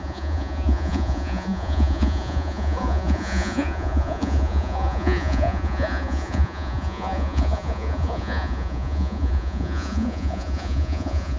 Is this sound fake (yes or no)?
yes